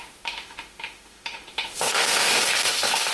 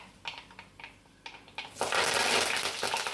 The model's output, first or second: first